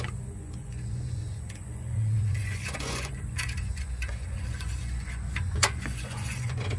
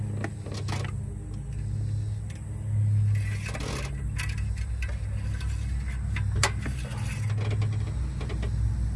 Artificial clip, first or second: first